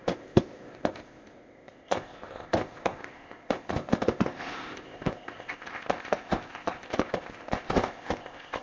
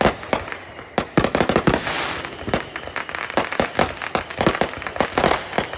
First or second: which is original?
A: second